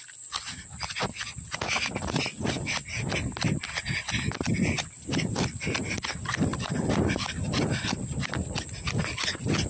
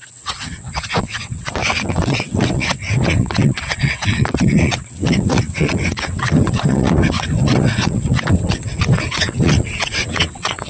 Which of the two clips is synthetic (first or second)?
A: second